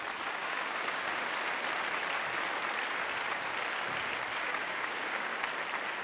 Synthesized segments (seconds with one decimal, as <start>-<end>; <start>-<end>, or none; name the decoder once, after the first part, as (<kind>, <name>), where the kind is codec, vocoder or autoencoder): 0.4-1.3 (codec, DAC); 4.3-5.4